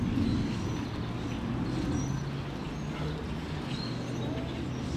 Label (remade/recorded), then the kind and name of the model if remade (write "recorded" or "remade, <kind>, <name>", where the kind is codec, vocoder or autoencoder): recorded